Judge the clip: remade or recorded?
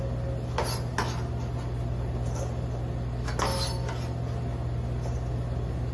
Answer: recorded